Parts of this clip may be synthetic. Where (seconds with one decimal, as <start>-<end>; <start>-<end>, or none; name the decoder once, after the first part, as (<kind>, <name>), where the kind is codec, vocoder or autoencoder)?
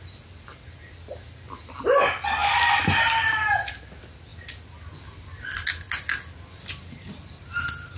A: 2.4-3.4 (vocoder, BigVGAN v2)